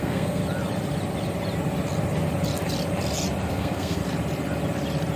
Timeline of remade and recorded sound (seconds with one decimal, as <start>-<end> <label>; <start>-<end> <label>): 0.0-0.4 remade; 0.4-3.5 recorded; 3.5-4.0 remade; 4.0-5.2 recorded